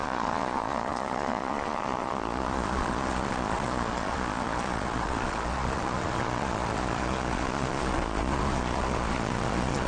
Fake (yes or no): yes